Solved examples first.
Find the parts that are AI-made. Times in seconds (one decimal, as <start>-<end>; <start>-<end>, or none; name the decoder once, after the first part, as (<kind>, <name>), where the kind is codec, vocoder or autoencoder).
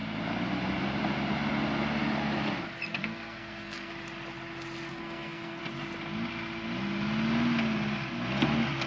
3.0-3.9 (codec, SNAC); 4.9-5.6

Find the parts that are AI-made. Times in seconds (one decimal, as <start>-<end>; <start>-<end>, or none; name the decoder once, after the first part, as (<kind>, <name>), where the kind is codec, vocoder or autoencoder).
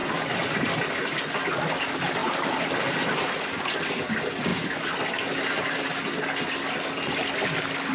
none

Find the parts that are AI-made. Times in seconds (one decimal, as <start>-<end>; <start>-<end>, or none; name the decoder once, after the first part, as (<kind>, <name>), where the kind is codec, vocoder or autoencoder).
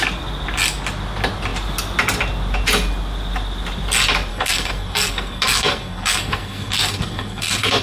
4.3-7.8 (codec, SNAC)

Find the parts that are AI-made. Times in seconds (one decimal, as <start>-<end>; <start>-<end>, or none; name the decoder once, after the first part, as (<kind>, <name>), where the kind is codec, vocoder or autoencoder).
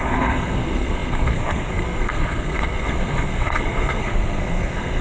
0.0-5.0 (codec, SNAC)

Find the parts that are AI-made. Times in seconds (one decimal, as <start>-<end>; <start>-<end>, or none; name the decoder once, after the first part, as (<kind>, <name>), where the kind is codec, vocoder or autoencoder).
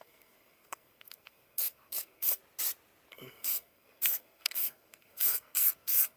0.0-2.4 (codec, SNAC); 3.1-6.2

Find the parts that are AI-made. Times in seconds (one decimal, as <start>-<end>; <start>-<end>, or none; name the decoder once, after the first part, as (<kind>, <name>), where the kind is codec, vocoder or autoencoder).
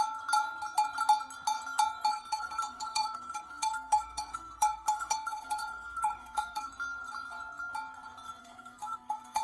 2.1-6.7 (codec, SNAC); 8.4-9.4